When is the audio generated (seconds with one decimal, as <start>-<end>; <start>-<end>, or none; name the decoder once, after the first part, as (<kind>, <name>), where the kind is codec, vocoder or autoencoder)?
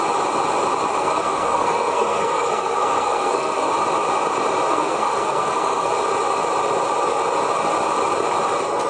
1.0-3.7 (codec, SNAC); 4.7-5.9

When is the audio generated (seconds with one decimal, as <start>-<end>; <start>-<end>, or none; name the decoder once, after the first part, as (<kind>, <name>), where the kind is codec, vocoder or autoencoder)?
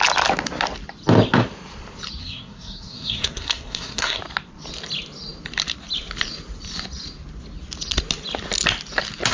2.2-4.2 (codec, SNAC)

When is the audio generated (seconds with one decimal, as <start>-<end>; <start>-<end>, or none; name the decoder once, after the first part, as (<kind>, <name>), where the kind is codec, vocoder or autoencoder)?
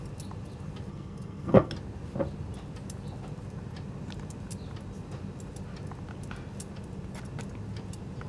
0.9-1.7 (codec, SNAC)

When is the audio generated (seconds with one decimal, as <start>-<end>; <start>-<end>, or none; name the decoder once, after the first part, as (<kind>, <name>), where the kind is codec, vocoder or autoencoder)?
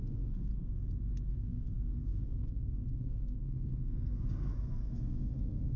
0.0-0.5 (codec, SNAC); 1.3-5.8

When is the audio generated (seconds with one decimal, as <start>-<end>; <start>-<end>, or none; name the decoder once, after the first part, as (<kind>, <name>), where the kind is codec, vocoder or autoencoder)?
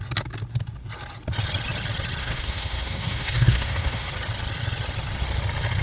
2.2-4.1 (codec, SNAC)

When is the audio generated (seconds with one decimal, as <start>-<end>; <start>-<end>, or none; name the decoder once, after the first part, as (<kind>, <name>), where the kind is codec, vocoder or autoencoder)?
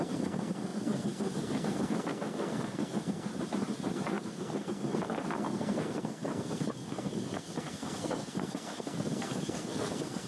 0.0-3.3 (codec, SNAC); 3.9-10.3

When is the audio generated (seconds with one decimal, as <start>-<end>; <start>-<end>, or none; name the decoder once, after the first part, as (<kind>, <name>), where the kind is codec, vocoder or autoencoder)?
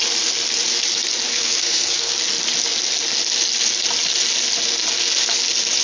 1.3-2.1 (codec, SNAC)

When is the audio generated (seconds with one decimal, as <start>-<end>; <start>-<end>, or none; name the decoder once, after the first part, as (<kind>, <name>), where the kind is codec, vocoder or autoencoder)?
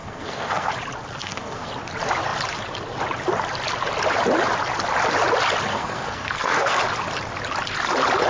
0.0-0.7 (codec, SNAC); 1.2-1.7; 5.7-6.8